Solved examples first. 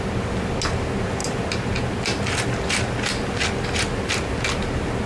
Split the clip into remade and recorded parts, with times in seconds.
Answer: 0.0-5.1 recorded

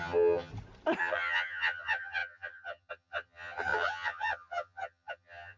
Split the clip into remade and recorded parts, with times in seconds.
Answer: 0.0-0.5 remade; 0.5-1.0 recorded; 1.0-5.6 remade

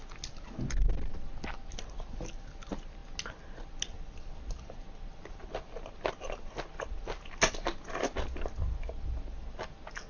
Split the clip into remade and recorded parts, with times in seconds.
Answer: 0.0-10.1 recorded

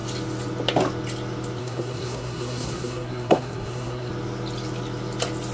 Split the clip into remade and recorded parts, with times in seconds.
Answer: 0.0-1.6 recorded; 1.6-4.1 remade; 4.1-5.5 recorded

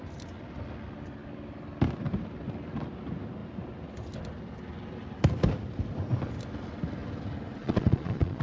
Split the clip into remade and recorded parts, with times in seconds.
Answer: 0.0-7.6 recorded; 7.6-8.4 remade

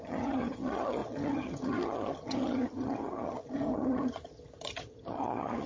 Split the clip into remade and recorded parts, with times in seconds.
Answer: 0.0-5.7 remade